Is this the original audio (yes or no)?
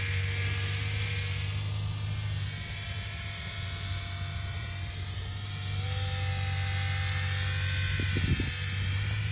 yes